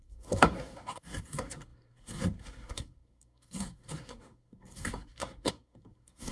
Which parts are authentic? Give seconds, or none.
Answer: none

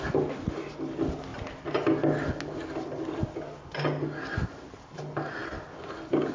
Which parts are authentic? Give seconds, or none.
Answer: 0.0-6.3

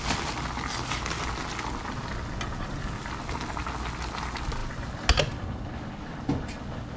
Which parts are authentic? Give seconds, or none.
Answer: 0.0-7.0